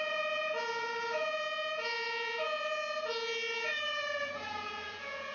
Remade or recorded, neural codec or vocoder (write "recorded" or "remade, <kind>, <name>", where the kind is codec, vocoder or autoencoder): remade, vocoder, Vocos